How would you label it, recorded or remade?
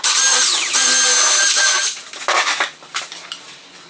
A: recorded